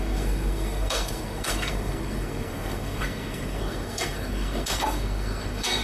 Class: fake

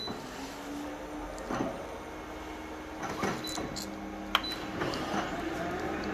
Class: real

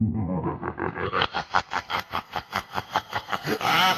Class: fake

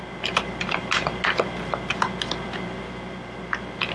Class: real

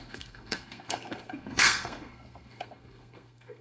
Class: fake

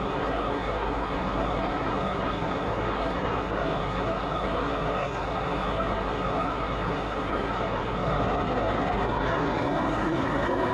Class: fake